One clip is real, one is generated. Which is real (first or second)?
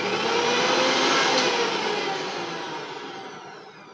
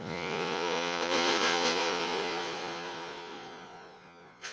first